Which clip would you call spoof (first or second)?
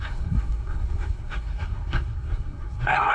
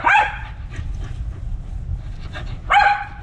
first